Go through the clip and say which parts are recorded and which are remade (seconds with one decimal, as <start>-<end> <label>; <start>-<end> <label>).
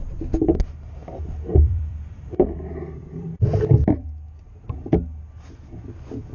0.0-0.6 remade; 0.6-1.0 recorded; 1.0-4.4 remade; 4.4-6.3 recorded